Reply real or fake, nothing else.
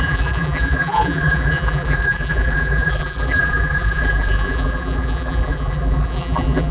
fake